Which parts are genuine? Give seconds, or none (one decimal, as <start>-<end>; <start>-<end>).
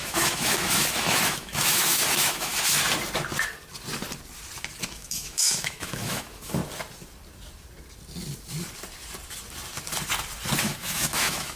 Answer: 2.5-4.8; 6.6-10.6